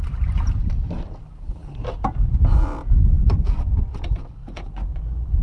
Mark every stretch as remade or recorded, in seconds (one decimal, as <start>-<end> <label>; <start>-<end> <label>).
0.0-4.4 recorded; 4.4-5.4 remade